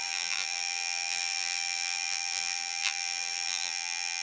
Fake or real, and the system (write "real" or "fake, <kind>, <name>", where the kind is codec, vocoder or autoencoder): fake, vocoder, BigVGAN v2